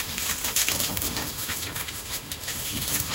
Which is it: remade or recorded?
remade